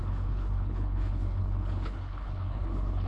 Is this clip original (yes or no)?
no